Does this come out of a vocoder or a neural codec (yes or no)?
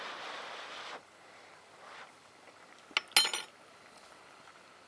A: no